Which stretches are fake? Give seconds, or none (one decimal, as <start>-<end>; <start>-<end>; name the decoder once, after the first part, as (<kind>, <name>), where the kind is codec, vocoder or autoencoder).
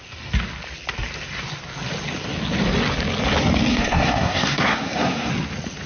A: 3.7-5.3 (codec, SNAC)